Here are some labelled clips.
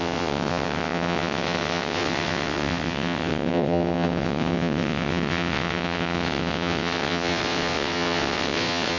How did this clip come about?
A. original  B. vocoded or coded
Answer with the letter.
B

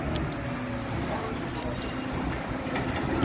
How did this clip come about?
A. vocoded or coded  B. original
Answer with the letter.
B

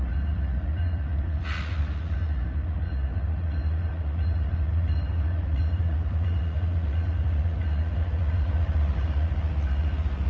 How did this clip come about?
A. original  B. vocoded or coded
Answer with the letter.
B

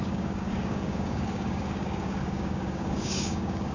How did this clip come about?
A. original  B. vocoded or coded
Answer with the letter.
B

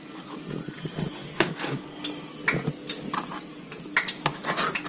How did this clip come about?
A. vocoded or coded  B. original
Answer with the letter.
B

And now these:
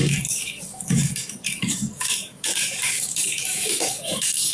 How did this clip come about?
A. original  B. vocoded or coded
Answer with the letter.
B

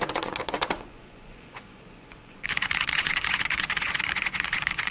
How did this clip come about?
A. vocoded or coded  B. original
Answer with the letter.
A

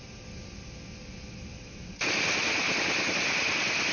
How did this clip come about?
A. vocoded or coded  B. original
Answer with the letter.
B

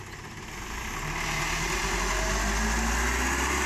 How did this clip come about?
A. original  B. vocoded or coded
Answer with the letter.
A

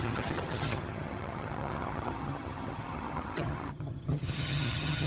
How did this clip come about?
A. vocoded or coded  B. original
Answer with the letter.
A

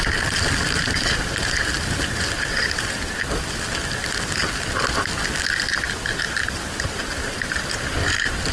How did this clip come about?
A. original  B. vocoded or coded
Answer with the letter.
A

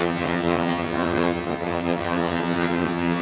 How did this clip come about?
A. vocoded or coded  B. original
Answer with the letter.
A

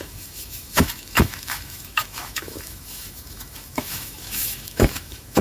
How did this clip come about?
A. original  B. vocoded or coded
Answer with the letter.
B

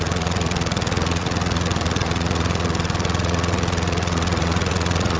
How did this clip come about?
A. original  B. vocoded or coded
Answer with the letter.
B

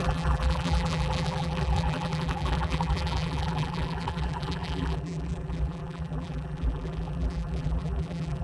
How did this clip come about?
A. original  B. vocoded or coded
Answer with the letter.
B